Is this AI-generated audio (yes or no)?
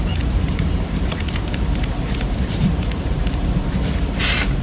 yes